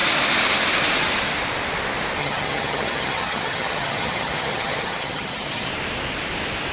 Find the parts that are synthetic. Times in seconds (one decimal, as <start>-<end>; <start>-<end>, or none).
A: 2.2-5.7